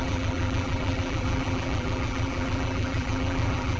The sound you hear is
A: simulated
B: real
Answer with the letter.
A